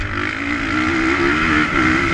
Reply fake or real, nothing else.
real